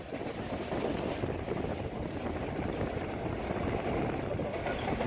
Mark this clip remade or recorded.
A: recorded